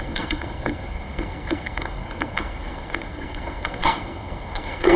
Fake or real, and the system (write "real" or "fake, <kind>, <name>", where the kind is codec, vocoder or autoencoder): fake, codec, SNAC